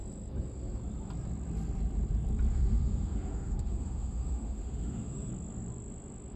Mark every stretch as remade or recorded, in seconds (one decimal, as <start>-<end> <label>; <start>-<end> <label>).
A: 0.0-2.5 recorded; 2.5-5.3 remade; 5.3-6.4 recorded